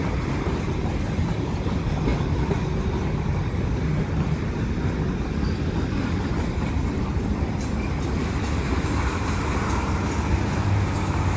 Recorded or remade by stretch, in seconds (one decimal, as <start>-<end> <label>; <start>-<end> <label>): 0.0-11.4 recorded